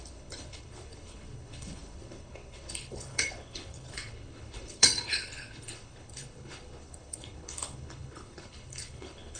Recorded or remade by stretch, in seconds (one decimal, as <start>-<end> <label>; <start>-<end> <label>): 0.0-9.4 remade